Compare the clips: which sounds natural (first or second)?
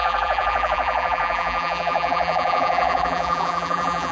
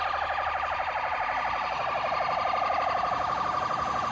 second